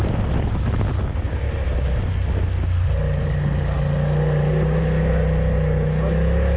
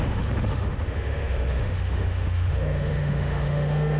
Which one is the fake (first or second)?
second